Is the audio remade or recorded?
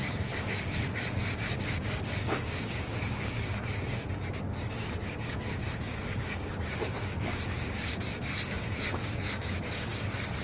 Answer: remade